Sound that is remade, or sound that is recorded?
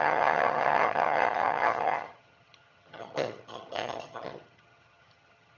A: remade